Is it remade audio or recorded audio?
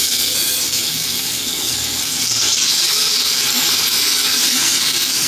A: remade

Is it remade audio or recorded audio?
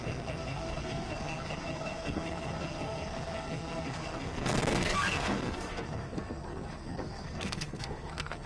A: remade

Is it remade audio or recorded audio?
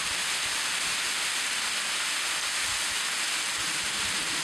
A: recorded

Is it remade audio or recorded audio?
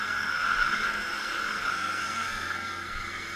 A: remade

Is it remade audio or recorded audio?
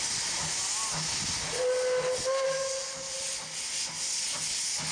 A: recorded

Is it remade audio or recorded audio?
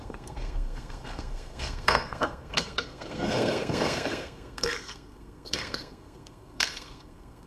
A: remade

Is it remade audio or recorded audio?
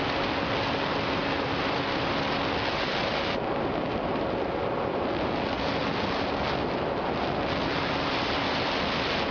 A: recorded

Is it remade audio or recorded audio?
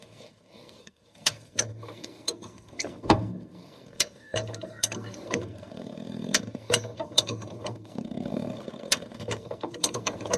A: remade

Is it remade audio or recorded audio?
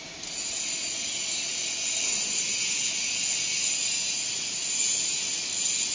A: recorded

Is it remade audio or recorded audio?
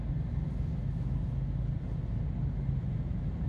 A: recorded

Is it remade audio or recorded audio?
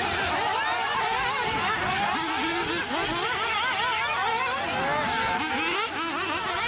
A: recorded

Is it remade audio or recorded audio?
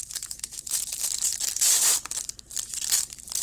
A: recorded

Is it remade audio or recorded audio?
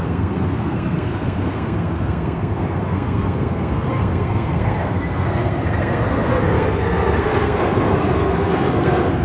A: remade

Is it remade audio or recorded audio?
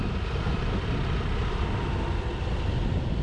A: recorded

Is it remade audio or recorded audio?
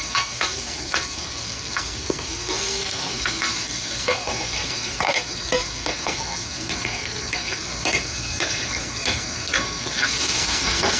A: remade